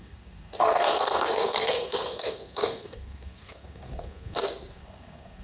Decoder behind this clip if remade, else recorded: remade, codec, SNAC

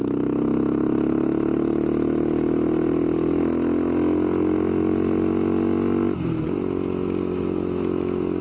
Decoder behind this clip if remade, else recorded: recorded